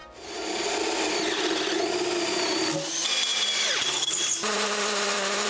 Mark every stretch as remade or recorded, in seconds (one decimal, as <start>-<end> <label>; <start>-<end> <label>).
0.0-3.3 recorded; 3.3-5.5 remade